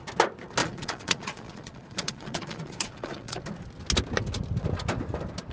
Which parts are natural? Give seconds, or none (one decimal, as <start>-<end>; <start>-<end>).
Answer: 0.0-0.6; 3.4-5.5

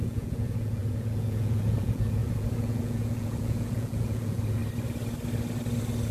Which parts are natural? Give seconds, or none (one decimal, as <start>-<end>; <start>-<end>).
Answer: 4.6-6.1

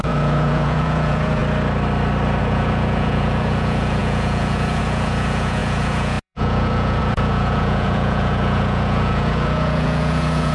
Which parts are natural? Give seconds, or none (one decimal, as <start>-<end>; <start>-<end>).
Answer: 1.4-2.4

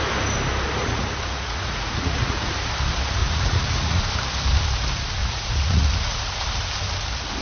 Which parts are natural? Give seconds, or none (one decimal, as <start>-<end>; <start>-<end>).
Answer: 0.0-0.8; 2.5-3.2; 4.0-5.2; 6.2-7.4

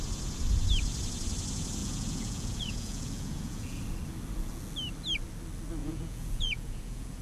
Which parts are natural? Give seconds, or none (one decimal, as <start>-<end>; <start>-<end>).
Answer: 0.0-1.8; 3.8-5.8

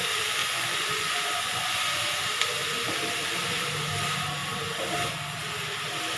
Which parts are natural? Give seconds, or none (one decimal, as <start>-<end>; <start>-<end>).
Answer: 0.0-0.4; 2.0-6.2

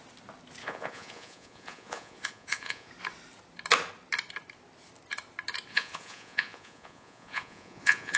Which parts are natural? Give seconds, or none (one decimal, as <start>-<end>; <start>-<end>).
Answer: 0.0-0.6; 2.9-5.7

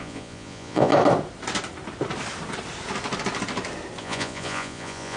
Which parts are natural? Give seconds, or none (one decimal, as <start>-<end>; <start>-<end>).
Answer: 0.9-4.0